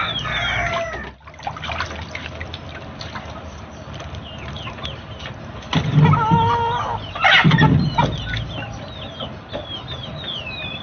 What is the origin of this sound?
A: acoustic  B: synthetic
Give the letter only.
A